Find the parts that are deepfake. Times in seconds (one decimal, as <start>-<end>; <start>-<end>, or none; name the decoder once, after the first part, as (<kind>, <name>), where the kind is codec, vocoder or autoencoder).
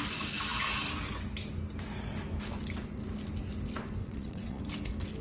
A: 4.0-4.6 (vocoder, WaveNeXt)